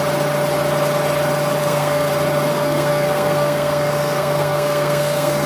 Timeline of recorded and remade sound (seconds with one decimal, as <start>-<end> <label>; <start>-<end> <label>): 0.0-1.6 recorded; 1.6-2.1 remade; 2.1-2.5 recorded; 2.5-5.5 remade